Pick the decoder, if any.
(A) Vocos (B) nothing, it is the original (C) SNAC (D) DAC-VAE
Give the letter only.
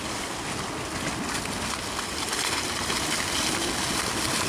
B